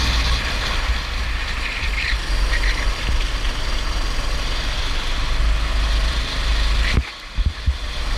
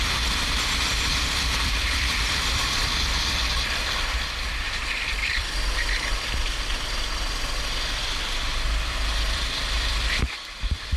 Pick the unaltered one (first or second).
first